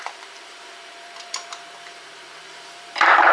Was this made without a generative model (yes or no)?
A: no